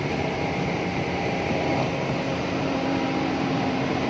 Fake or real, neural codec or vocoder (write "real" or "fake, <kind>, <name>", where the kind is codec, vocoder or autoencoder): fake, vocoder, BigVGAN v2